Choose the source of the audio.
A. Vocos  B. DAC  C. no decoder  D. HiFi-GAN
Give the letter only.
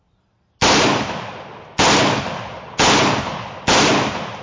C